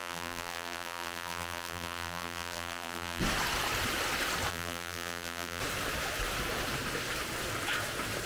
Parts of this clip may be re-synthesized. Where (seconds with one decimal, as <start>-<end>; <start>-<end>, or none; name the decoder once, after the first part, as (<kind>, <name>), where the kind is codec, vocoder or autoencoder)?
0.0-3.2 (vocoder, BigVGAN v2); 4.5-5.6